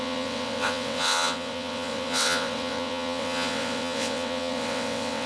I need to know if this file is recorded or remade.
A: remade